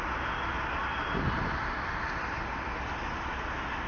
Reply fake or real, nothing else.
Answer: real